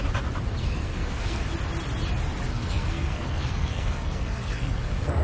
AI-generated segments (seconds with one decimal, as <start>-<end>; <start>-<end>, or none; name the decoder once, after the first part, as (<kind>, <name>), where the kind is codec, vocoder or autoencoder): 0.6-1.4 (codec, SNAC); 2.5-5.2